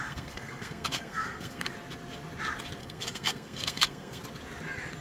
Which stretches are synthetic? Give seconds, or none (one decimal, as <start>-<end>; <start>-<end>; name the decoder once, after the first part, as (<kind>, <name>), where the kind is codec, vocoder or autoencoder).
0.0-1.7 (codec, SNAC); 2.8-4.2